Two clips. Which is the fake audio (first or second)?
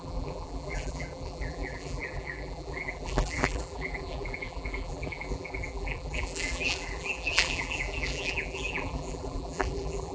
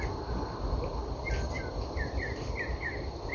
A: first